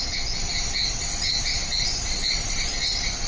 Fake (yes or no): no